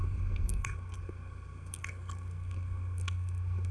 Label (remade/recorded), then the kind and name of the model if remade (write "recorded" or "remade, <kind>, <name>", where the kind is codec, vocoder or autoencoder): remade, codec, SNAC